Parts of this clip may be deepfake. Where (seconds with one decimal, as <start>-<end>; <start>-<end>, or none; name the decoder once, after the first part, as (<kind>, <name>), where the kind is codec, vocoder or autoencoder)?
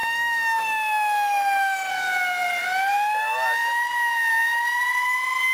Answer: 0.0-1.9 (autoencoder, DAC-VAE)